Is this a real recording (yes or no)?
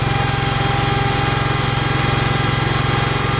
yes